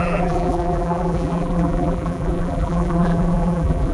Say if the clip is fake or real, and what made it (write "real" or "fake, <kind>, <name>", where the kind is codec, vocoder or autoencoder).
fake, vocoder, BigVGAN v2